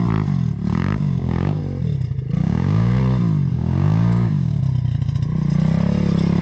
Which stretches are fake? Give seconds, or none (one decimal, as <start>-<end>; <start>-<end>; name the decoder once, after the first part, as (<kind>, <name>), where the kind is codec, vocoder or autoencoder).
0.7-1.6 (codec, DAC); 2.4-3.0; 3.5-4.6